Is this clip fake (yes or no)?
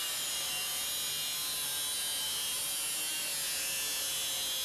no